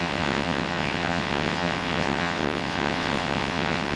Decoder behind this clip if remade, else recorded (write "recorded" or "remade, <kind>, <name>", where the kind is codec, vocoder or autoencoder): remade, vocoder, WaveNeXt